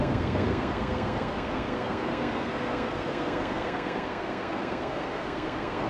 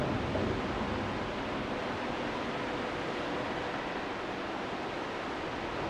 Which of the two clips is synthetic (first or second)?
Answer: first